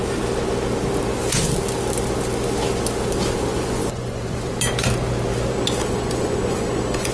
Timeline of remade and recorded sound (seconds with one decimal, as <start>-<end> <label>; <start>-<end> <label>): 0.0-3.5 recorded; 3.5-4.5 remade; 4.5-5.8 recorded; 5.8-7.1 remade